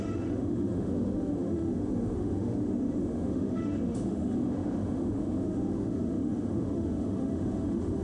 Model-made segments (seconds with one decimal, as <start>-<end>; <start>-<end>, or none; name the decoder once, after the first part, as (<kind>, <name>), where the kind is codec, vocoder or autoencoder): 0.0-8.0 (autoencoder, DAC-VAE)